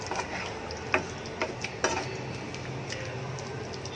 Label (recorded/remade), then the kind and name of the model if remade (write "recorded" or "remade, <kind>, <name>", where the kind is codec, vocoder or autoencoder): recorded